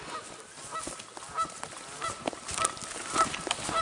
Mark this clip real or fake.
real